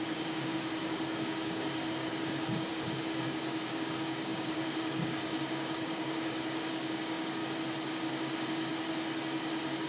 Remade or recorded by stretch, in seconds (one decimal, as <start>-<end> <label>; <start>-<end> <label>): 0.0-7.4 remade; 7.4-7.9 recorded; 7.9-8.7 remade; 8.7-9.9 recorded

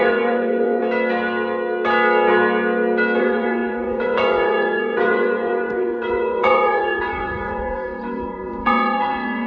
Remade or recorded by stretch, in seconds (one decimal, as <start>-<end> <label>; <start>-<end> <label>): 0.0-0.8 remade; 0.8-3.2 recorded; 3.2-9.5 remade

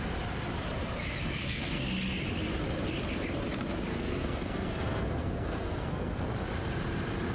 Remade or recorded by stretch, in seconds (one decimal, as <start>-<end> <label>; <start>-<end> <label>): 0.0-1.2 recorded; 1.2-1.8 remade; 1.8-3.9 recorded; 3.9-6.2 remade; 6.2-7.3 recorded

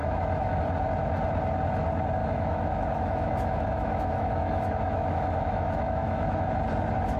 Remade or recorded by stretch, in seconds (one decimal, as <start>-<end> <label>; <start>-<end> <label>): 0.0-0.6 remade; 0.6-2.2 recorded; 2.2-6.5 remade; 6.5-7.2 recorded